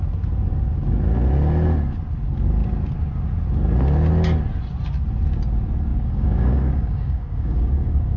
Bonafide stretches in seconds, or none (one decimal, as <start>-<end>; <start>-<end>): 0.0-5.9